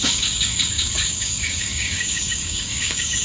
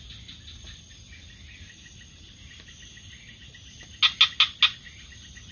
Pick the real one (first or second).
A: second